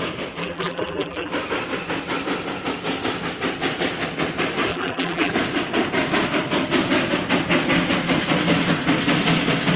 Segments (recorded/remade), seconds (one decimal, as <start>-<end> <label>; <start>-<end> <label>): 0.0-0.4 recorded; 0.4-1.3 remade; 1.3-4.7 recorded; 4.7-5.3 remade; 5.3-9.8 recorded